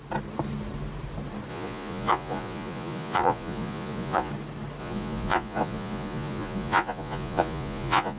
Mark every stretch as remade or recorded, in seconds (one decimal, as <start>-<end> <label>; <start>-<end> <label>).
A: 0.0-1.5 recorded; 1.5-4.3 remade; 4.3-4.8 recorded; 4.8-8.2 remade

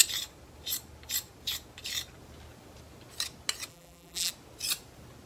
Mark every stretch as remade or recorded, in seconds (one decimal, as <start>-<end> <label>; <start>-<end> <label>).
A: 0.0-3.7 recorded; 3.7-4.3 remade; 4.3-5.3 recorded

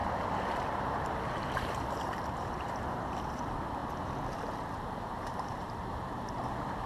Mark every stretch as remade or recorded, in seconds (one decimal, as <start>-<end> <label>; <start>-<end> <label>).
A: 0.0-3.8 remade; 3.8-4.7 recorded; 4.7-6.9 remade

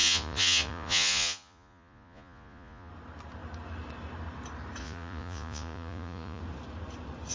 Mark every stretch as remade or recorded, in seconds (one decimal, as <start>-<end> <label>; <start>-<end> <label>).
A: 0.0-2.9 remade; 2.9-4.8 recorded; 4.8-6.4 remade; 6.4-7.3 recorded

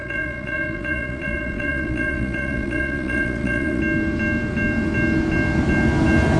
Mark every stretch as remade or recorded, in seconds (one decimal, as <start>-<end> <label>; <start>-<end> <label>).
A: 0.0-3.8 remade; 3.8-6.4 recorded